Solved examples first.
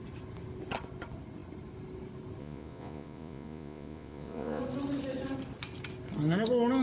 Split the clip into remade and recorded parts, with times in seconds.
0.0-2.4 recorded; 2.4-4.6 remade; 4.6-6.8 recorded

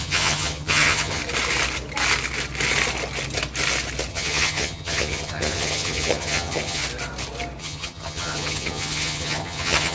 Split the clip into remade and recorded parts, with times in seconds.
0.0-1.2 remade; 1.2-4.1 recorded; 4.1-6.8 remade; 6.8-7.6 recorded; 7.6-9.9 remade

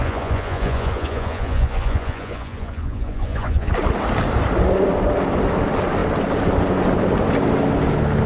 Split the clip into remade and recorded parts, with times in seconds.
0.0-3.7 remade; 3.7-8.3 recorded

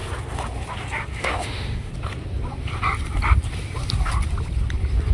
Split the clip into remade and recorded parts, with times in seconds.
0.0-1.2 recorded; 1.2-1.9 remade; 1.9-5.1 recorded